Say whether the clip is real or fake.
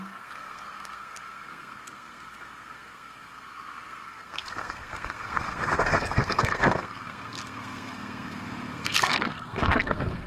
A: fake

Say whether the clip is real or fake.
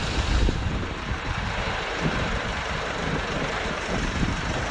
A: fake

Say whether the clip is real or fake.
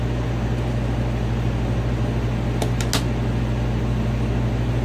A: real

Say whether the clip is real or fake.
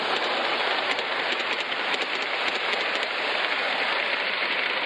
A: real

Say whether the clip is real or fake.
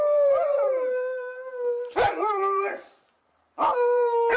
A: fake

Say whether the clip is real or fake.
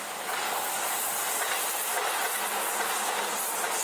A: real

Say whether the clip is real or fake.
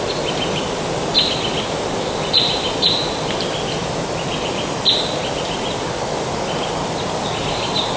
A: real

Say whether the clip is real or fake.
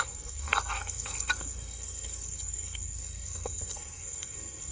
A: fake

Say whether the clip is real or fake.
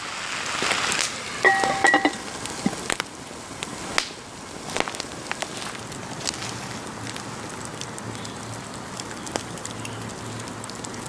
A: real